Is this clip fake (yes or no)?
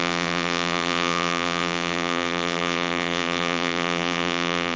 yes